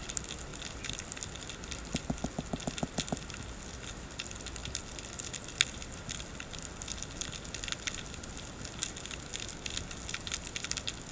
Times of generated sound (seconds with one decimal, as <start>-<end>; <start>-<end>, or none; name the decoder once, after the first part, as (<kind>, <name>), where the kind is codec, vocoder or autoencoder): none